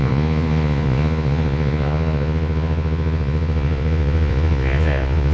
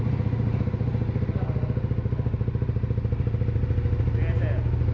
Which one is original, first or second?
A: second